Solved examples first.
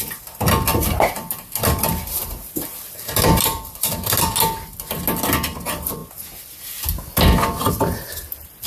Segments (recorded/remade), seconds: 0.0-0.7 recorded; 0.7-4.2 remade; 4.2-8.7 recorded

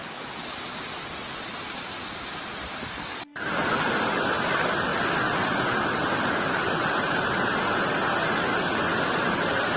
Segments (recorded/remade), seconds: 0.0-4.9 recorded; 4.9-6.2 remade; 6.2-9.8 recorded

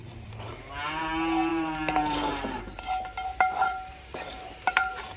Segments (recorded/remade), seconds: 0.0-0.5 remade; 0.5-1.5 recorded; 1.5-2.6 remade; 2.6-3.3 recorded; 3.3-5.2 remade